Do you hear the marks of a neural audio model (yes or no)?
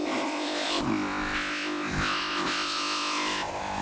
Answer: yes